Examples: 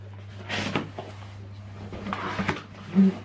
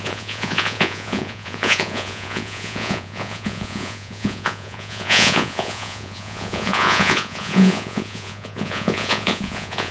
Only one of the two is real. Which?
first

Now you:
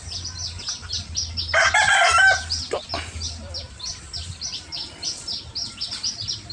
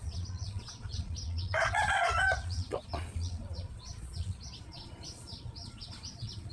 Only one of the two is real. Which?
first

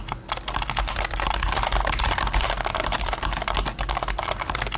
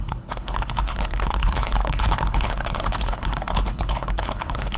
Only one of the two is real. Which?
first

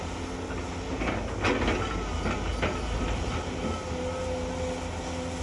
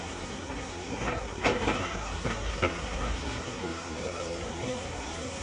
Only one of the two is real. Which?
first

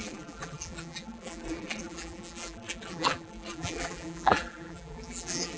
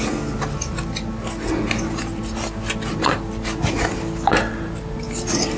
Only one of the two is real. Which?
second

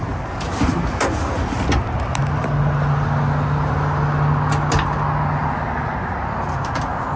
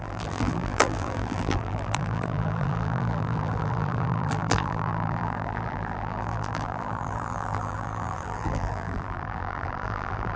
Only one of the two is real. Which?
first